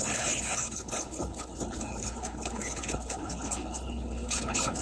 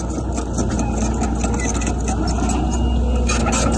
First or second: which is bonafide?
second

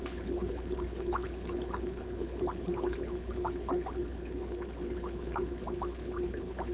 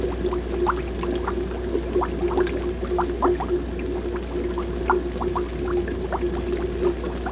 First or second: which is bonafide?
second